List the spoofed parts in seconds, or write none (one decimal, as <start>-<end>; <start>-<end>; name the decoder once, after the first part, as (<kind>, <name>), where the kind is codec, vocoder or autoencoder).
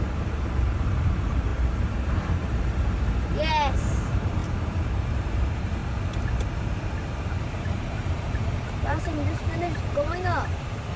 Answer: 0.0-5.8 (vocoder, BigVGAN v2); 7.4-11.0